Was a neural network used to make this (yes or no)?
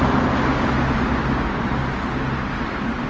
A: no